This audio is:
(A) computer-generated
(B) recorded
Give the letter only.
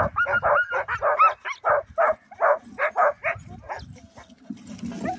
B